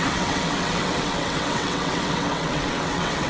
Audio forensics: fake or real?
fake